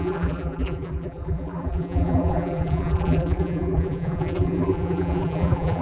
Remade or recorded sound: remade